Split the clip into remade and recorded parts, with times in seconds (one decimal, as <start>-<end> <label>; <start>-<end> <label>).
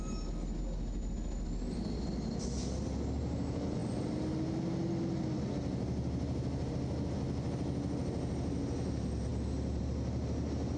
0.0-10.8 recorded